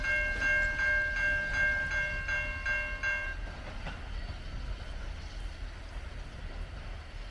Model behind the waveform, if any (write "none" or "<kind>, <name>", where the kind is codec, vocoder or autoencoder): none